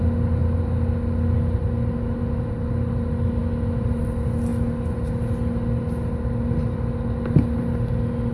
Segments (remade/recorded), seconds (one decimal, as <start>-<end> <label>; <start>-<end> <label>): 0.0-8.3 recorded